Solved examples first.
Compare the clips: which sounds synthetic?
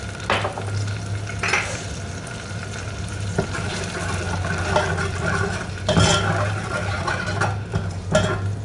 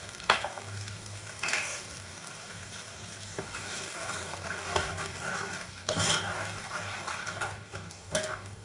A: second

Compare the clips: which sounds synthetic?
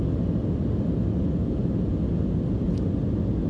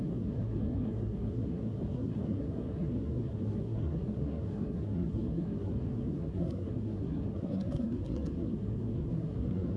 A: second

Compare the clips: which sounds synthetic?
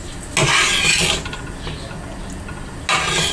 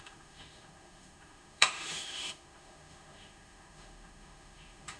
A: second